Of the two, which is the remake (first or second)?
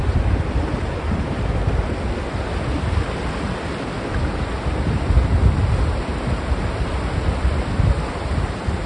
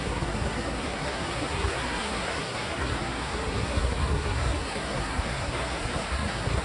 second